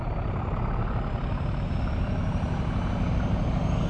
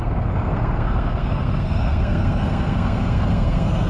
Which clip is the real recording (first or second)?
first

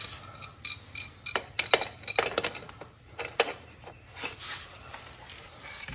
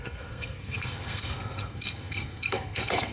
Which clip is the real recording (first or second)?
first